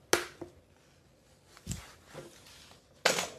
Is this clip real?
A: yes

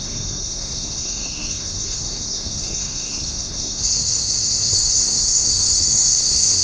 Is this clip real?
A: no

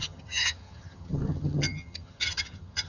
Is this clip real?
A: no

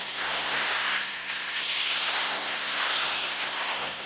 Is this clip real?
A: no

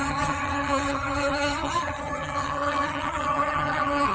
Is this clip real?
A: no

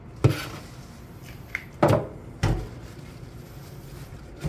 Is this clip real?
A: yes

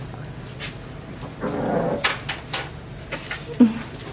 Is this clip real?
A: yes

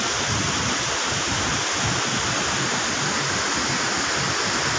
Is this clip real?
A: yes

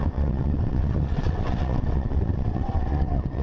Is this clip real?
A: no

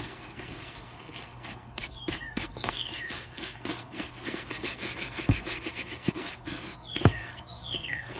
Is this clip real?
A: no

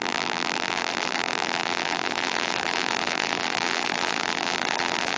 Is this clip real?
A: no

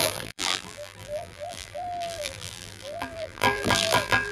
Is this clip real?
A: no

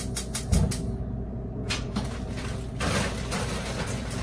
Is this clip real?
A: yes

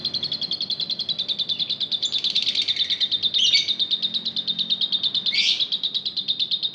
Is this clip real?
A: yes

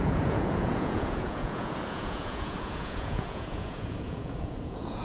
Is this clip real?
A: no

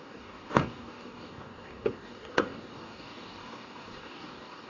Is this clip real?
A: no